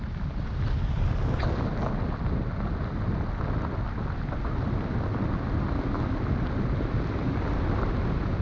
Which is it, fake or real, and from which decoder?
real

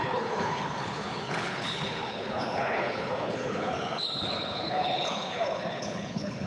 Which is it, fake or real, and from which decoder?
fake, codec, HILCodec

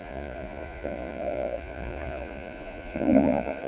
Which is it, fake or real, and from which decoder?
fake, vocoder, Vocos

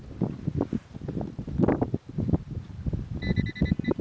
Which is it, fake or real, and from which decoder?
real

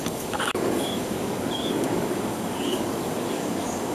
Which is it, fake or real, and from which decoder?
fake, codec, DAC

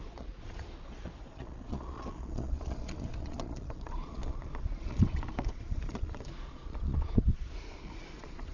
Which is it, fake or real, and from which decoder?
fake, vocoder, Vocos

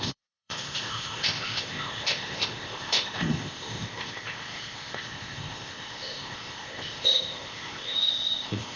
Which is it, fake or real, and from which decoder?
fake, codec, ZipCodec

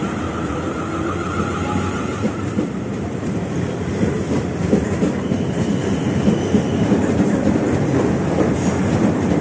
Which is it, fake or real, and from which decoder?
fake, vocoder, BigVGAN v2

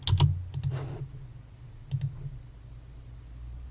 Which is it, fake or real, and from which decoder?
real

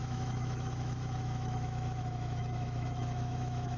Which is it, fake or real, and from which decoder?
fake, autoencoder, DAC-VAE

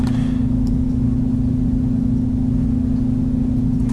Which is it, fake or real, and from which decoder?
real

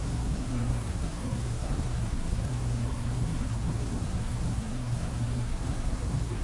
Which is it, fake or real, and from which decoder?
fake, codec, SNAC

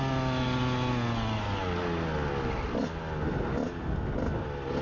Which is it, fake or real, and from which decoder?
real